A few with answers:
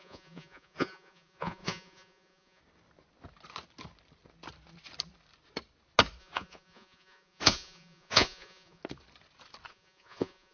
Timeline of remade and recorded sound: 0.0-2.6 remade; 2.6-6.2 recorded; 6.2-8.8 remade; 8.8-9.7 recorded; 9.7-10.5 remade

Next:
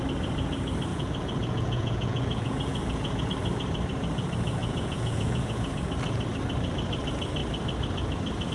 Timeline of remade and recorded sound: 0.0-0.9 recorded; 0.9-3.2 remade; 3.2-4.6 recorded; 4.6-5.7 remade; 5.7-8.5 recorded